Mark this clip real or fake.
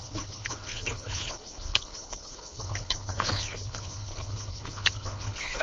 fake